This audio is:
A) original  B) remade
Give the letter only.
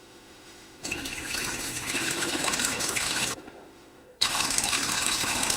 B